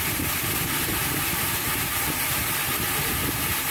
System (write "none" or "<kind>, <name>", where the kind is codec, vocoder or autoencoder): vocoder, BigVGAN v2